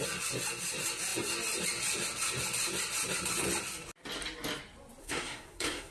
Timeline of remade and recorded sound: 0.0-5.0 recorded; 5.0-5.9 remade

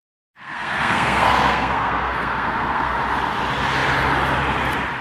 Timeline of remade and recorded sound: 0.0-3.0 remade; 3.0-5.0 recorded